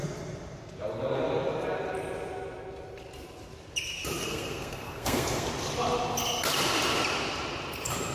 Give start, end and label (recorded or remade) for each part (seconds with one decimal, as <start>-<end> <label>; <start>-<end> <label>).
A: 0.0-4.2 recorded; 4.2-5.5 remade; 5.5-8.1 recorded